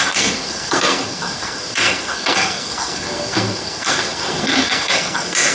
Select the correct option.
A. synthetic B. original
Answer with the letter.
A